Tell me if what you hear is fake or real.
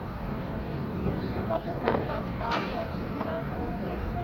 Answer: fake